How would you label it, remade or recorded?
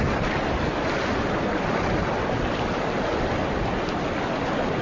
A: recorded